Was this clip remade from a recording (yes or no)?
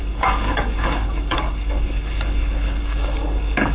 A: yes